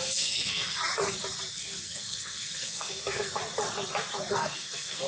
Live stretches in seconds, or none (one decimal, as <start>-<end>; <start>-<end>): 0.8-1.5; 3.4-4.3